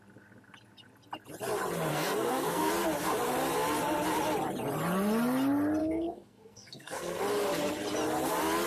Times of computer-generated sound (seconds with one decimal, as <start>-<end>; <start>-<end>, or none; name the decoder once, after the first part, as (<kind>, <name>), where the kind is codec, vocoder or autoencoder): 1.9-2.7 (codec, SNAC); 5.8-7.2